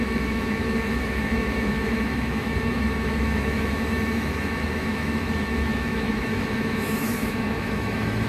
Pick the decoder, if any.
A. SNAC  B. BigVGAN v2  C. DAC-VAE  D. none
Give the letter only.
C